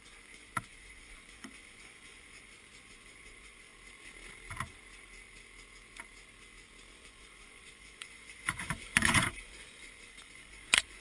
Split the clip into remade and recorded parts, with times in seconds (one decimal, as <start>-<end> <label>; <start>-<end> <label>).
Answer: 0.0-3.7 remade; 3.7-6.9 recorded; 6.9-11.0 remade